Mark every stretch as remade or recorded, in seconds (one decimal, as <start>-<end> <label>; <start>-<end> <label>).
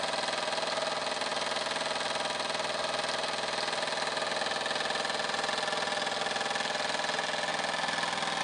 0.0-8.4 recorded